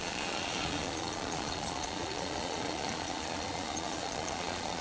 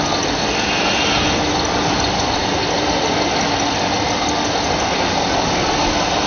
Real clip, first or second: second